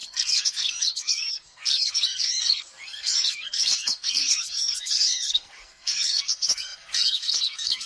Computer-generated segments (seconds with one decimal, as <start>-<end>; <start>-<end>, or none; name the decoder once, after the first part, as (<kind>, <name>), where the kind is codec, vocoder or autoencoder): 0.0-7.9 (codec, SNAC)